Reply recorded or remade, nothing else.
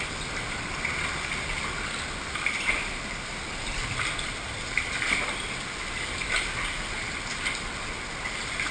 recorded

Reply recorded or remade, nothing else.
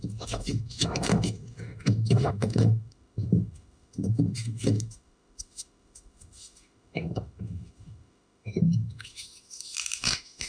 remade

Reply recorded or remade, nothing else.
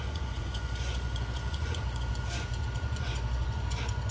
remade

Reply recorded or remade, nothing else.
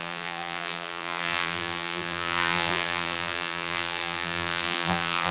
remade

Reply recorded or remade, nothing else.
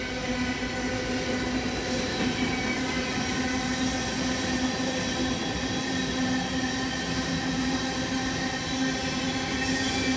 recorded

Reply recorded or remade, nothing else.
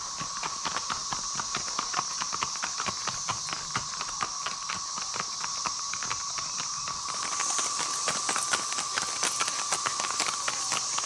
recorded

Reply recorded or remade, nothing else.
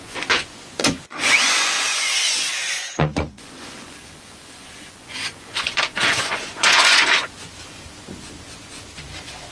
remade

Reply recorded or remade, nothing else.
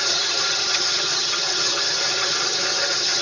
remade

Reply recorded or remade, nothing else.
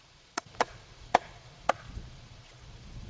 remade